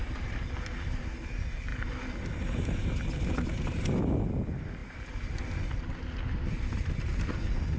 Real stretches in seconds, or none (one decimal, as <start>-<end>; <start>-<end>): 0.0-7.8